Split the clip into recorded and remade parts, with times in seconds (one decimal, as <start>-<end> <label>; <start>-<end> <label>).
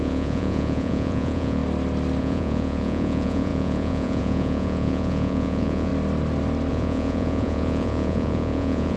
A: 0.0-1.6 remade; 1.6-2.2 recorded; 2.2-5.9 remade; 5.9-6.7 recorded; 6.7-9.0 remade